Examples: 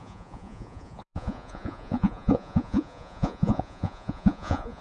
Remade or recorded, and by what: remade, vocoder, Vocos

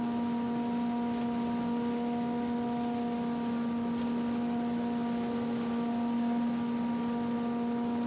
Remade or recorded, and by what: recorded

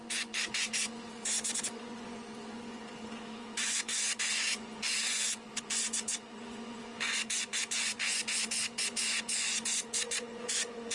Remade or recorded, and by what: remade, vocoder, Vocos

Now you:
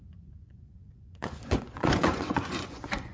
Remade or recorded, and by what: remade, vocoder, Vocos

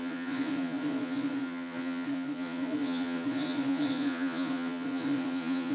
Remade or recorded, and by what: remade, vocoder, Vocos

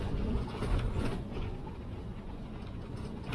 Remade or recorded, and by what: remade, vocoder, Vocos